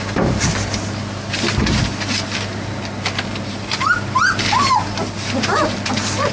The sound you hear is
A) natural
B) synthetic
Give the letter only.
A